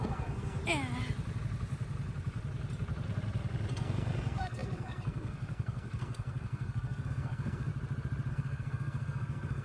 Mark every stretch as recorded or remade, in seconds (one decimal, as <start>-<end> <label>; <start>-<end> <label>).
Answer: 0.0-0.6 remade; 0.6-3.7 recorded; 3.7-7.7 remade; 7.7-8.3 recorded; 8.3-9.6 remade